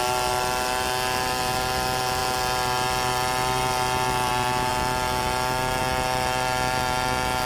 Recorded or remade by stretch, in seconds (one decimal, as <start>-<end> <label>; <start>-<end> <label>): 0.0-7.5 recorded